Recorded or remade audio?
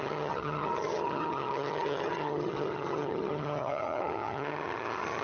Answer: remade